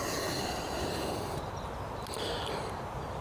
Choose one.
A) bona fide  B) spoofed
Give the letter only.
A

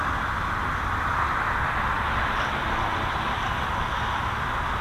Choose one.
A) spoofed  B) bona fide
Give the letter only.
B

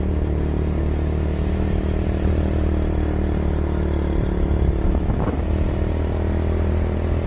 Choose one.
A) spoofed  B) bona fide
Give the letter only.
B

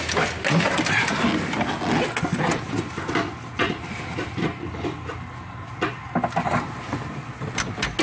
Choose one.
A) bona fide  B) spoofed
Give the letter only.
A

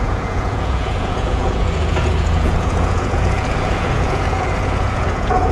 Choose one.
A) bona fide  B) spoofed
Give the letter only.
B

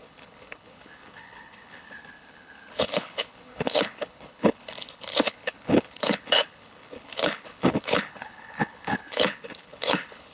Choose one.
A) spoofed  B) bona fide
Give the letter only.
A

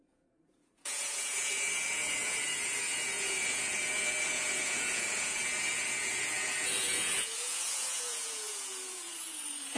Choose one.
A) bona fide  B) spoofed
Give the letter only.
B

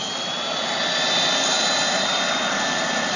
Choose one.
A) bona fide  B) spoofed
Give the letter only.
A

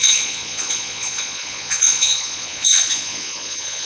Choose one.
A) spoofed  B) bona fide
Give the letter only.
A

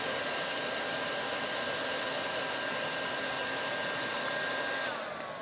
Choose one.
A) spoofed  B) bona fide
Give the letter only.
B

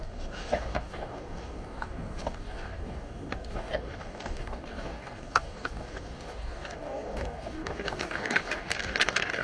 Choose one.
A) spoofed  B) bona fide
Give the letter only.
A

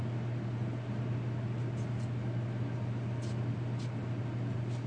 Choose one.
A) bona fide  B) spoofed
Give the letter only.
A